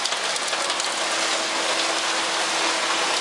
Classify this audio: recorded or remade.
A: recorded